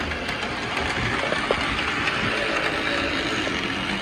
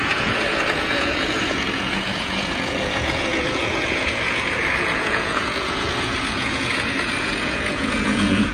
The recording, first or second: first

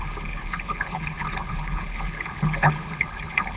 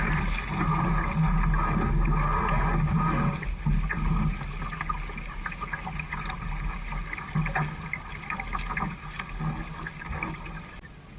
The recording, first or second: second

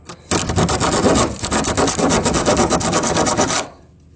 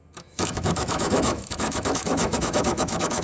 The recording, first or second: first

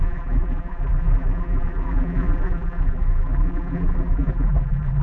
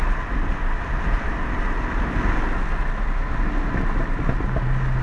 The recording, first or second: second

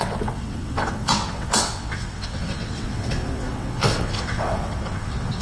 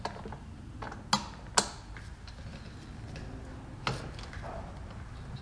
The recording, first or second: second